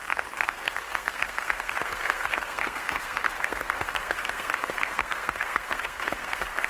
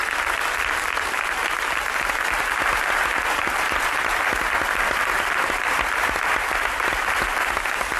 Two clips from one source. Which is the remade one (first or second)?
first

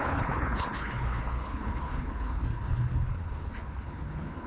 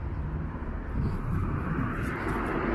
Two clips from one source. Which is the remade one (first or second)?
first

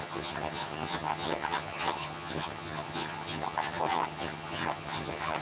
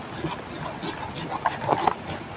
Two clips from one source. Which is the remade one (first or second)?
first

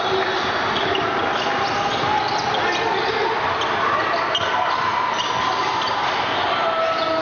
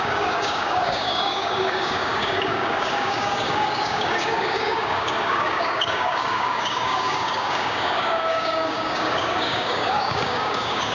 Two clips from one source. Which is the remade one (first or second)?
second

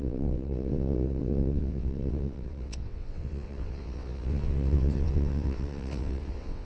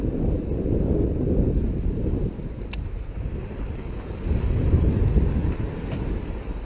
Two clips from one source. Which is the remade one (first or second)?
first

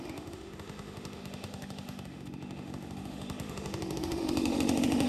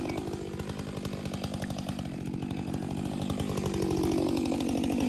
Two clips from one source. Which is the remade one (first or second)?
first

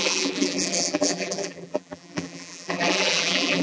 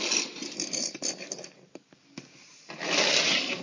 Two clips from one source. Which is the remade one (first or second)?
first